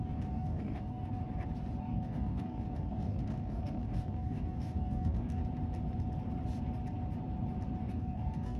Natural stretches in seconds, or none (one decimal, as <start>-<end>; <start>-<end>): 1.2-1.8; 5.4-7.9